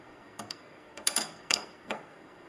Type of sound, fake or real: fake